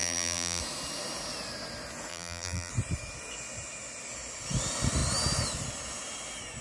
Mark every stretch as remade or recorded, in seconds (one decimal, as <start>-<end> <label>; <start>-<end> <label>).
0.0-0.6 remade; 0.6-2.1 recorded; 2.1-2.7 remade; 2.7-6.6 recorded